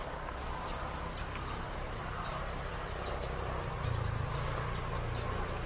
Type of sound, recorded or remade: recorded